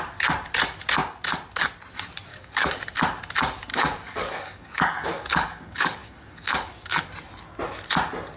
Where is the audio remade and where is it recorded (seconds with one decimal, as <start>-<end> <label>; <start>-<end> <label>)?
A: 0.0-2.3 recorded; 2.3-2.8 remade; 2.8-3.7 recorded; 3.7-7.0 remade; 7.0-8.4 recorded